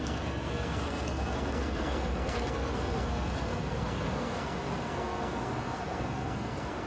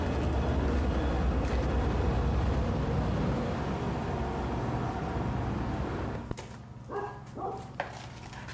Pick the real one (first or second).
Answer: second